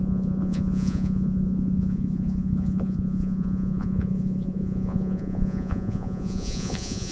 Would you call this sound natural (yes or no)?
no